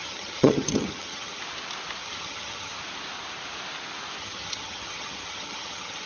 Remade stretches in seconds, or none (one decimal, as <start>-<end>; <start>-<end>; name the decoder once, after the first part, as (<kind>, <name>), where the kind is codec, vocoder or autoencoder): 0.0-1.4 (vocoder, HiFi-GAN); 2.0-2.7; 4.2-6.1